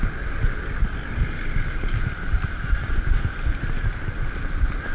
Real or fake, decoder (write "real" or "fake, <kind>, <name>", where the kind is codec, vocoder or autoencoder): real